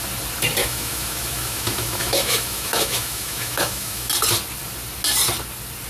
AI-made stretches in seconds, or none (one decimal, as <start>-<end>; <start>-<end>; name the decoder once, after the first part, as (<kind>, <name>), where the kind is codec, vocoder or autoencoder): 0.6-4.1 (autoencoder, DAC-VAE)